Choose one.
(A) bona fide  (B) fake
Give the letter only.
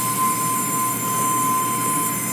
A